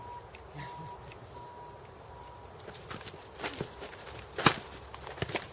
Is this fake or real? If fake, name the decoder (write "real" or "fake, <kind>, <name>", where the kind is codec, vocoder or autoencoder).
real